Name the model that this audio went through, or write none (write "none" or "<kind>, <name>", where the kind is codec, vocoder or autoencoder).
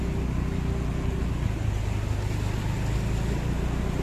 none